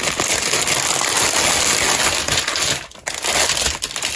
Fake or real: real